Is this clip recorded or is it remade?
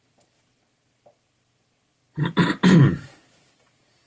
recorded